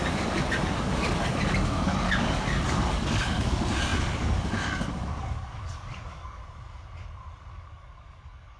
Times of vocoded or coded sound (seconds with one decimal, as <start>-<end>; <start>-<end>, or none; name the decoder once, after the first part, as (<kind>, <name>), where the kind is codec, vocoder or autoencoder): 0.0-6.4 (codec, DAC); 7.5-8.6